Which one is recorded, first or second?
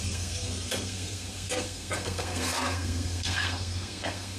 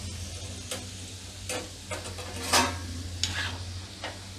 second